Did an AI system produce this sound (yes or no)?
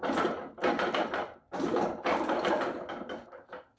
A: no